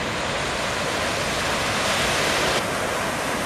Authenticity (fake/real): real